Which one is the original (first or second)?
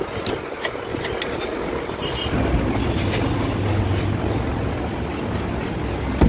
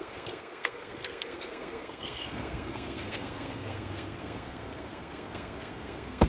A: first